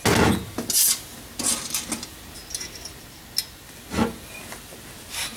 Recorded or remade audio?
recorded